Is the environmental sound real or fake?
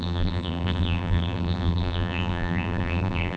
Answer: fake